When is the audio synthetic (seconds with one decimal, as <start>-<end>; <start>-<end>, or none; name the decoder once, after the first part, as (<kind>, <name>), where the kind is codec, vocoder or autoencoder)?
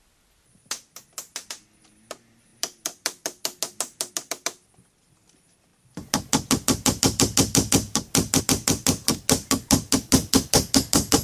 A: none